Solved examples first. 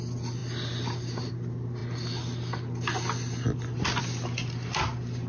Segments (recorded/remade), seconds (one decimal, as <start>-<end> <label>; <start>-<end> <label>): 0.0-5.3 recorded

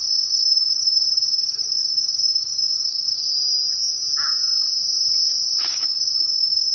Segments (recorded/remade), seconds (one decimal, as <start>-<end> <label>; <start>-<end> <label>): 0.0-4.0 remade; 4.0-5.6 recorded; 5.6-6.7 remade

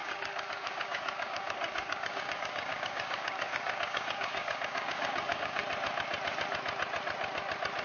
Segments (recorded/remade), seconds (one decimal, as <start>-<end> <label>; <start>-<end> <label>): 0.0-5.6 remade; 5.6-7.8 recorded

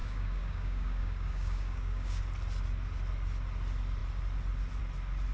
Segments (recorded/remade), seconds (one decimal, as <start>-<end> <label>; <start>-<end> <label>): 0.0-2.2 remade; 2.2-5.3 recorded

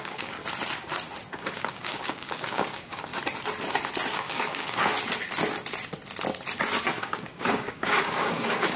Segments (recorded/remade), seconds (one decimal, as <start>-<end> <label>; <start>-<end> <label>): 0.0-0.4 remade; 0.4-1.3 recorded; 1.3-3.1 remade; 3.1-4.1 recorded; 4.1-4.9 remade; 4.9-7.0 recorded; 7.0-8.8 remade